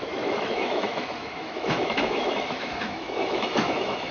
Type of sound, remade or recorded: remade